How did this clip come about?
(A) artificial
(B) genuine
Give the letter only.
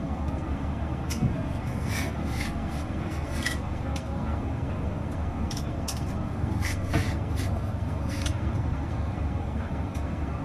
A